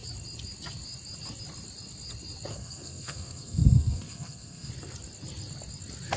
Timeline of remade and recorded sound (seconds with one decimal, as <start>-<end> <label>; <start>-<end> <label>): 0.0-2.5 recorded; 2.5-4.7 remade; 4.7-6.2 recorded